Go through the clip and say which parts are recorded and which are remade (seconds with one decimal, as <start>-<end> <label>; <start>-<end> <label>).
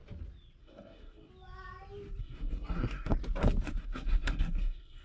0.0-0.6 recorded; 0.6-1.3 remade; 1.3-2.2 recorded; 2.2-3.1 remade; 3.1-3.8 recorded; 3.8-5.0 remade